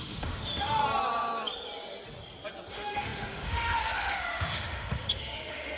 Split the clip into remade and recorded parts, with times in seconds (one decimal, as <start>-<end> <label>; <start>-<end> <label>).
0.0-0.8 remade; 0.8-2.7 recorded; 2.7-5.8 remade